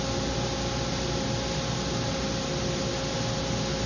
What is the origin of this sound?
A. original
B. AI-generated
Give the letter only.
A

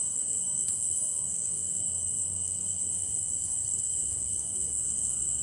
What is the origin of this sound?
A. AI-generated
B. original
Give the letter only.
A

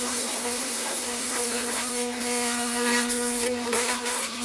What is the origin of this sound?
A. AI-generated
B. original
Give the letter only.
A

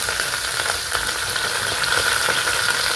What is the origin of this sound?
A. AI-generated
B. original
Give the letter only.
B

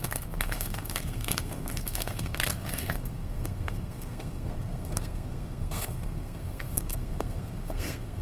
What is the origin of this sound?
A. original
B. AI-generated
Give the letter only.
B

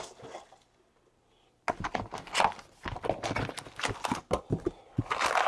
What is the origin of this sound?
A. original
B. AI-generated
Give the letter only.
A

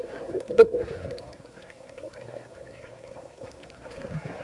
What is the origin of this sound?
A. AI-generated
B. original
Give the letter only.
A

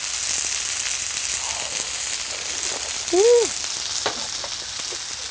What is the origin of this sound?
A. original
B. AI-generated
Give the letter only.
A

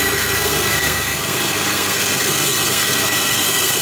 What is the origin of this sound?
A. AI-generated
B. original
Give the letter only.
A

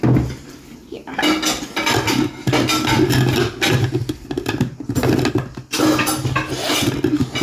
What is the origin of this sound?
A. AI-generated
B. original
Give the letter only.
B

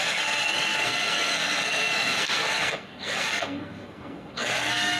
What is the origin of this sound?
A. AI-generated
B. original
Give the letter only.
A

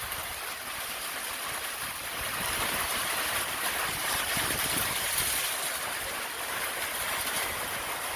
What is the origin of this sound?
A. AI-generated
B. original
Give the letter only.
B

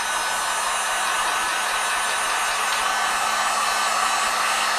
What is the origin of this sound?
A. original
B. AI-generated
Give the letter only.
A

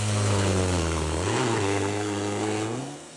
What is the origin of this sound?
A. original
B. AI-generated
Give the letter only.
B